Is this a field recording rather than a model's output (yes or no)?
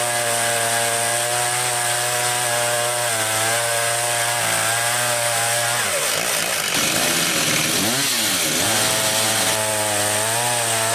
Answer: yes